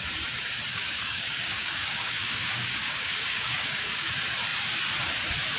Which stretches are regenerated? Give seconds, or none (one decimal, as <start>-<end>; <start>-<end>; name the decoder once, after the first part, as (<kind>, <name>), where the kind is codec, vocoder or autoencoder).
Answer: 0.7-4.1 (codec, DAC)

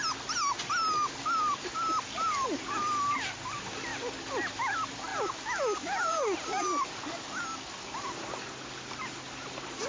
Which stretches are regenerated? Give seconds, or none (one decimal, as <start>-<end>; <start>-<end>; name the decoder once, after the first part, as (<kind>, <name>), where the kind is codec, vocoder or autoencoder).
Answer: none

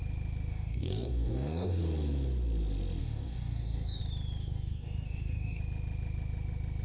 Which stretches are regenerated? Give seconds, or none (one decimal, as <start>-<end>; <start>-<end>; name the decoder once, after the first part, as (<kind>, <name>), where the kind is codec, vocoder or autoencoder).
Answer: 0.5-1.8 (codec, DAC); 3.0-4.0; 4.4-5.6

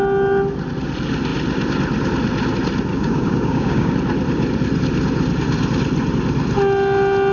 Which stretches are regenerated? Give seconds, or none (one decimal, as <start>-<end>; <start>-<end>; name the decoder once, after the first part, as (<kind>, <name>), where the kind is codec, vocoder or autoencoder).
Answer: 2.9-3.9 (codec, DAC)

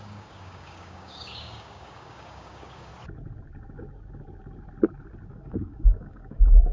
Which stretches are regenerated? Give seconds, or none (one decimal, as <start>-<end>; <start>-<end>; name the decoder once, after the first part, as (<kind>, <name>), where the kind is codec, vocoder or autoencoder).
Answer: 0.0-2.9 (codec, DAC); 5.3-6.7

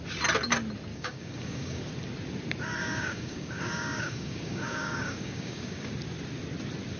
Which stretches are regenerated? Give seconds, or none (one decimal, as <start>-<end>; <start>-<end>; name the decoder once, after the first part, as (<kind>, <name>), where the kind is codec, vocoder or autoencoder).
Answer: 0.9-1.8 (codec, DAC); 2.8-5.9

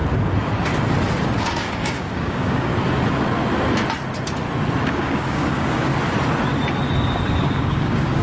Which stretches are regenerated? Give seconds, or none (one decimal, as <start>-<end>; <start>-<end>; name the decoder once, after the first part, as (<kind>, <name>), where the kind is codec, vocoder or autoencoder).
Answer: 1.4-2.7 (codec, DAC); 4.8-5.9; 7.4-8.2

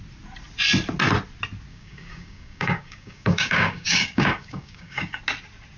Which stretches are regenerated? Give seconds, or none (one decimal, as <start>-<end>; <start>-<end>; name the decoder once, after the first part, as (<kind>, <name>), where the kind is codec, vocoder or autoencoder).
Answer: 1.7-5.2 (codec, DAC)